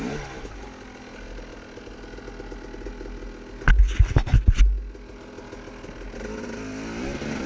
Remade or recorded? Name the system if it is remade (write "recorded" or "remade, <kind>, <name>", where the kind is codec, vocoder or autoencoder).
recorded